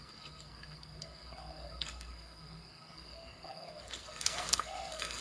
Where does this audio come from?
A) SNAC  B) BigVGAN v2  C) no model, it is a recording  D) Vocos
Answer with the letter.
A